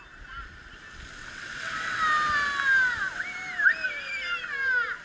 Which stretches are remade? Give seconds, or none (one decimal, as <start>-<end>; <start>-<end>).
1.2-2.0